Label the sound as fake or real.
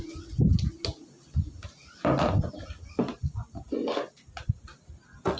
real